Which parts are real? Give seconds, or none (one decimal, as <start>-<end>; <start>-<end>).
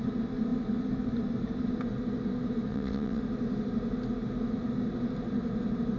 0.0-2.7; 3.2-6.0